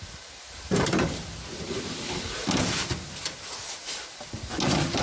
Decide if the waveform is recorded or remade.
recorded